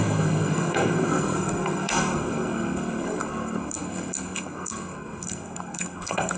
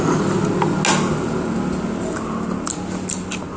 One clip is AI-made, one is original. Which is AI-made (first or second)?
first